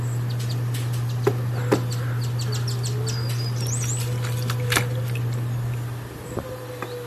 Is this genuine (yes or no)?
no